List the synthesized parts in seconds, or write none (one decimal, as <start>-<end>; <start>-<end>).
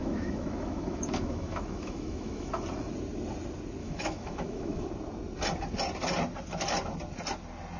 0.0-2.5; 3.8-4.9